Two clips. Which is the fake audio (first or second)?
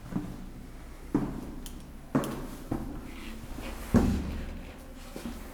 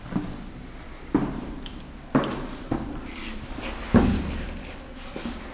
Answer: second